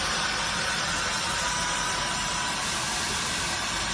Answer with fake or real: real